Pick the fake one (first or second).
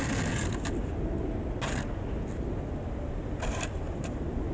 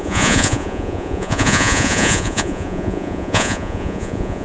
second